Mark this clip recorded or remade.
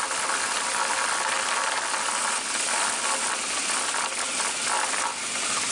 recorded